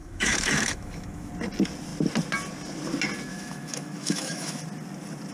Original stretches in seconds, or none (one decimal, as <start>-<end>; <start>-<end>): 1.3-3.3; 4.6-5.3